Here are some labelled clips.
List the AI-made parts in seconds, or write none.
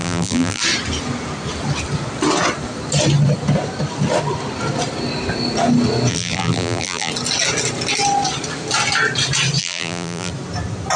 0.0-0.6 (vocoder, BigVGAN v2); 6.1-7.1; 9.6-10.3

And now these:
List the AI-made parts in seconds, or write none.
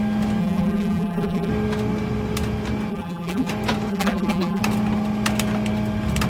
0.4-1.5 (vocoder, BigVGAN v2); 2.9-3.5; 3.9-4.6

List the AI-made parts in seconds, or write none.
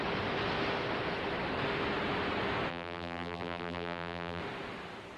2.7-4.4 (vocoder, BigVGAN v2)